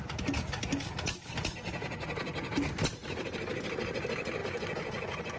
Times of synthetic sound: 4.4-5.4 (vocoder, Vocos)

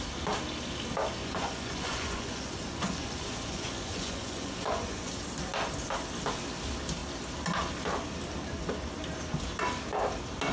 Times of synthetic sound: 1.2-5.1 (vocoder, Vocos)

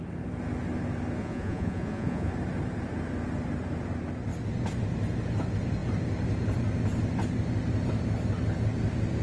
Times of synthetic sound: 1.2-2.3 (vocoder, Vocos)

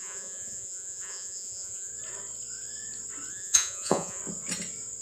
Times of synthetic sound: 0.0-1.9 (vocoder, Vocos); 3.3-4.2

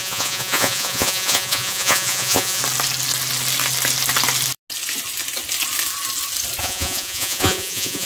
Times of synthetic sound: 0.0-2.6 (vocoder, Vocos); 6.6-8.1

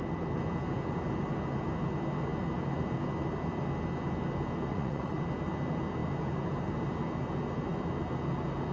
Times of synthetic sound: 4.7-5.2 (vocoder, Vocos)

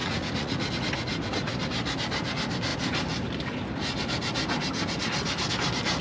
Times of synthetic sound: 0.0-0.7 (vocoder, Vocos)